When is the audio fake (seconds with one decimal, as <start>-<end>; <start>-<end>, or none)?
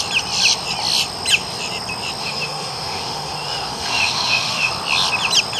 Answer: 2.2-4.7